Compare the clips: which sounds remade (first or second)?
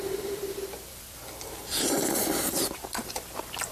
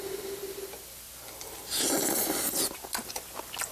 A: first